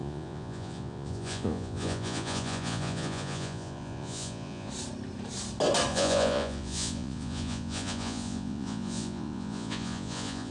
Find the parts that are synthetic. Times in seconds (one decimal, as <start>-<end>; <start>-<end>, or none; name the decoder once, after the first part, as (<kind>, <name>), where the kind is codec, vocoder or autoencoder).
0.0-4.7 (vocoder, Vocos); 5.9-10.5